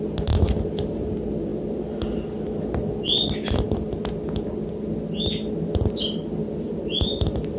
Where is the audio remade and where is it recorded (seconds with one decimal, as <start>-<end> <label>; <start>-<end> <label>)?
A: 0.0-7.6 recorded